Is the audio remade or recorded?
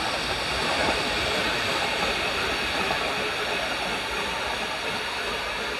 recorded